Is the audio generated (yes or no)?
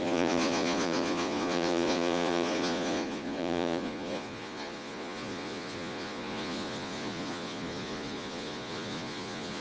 yes